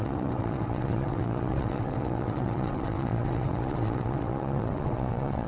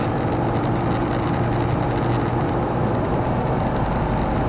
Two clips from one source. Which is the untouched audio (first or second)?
second